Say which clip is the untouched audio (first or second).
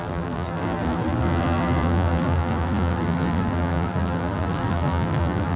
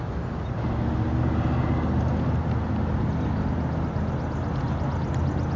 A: second